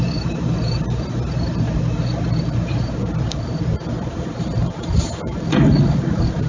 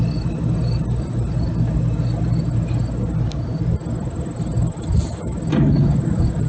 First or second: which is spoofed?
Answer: first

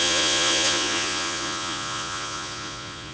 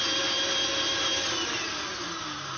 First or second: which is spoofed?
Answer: first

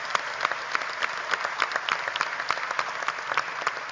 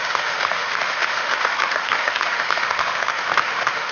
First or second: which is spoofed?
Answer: second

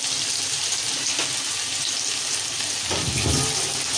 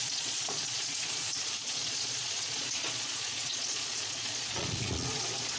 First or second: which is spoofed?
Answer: second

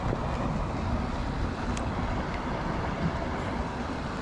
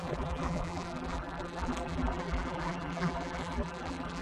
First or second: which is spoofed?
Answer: second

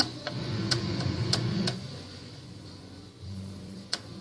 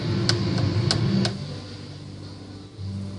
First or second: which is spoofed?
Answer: first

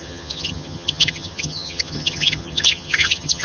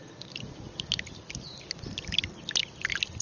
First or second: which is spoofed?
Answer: first